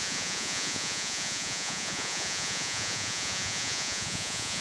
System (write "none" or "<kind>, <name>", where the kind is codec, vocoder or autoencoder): vocoder, Vocos